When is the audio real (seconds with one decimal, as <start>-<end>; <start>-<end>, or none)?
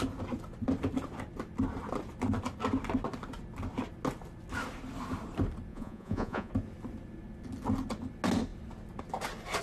0.0-5.7; 6.5-9.6